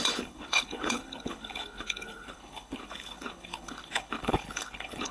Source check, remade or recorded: remade